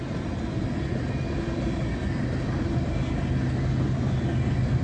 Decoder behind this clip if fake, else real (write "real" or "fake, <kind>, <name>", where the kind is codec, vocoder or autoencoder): real